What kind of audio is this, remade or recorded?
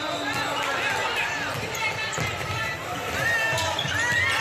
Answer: recorded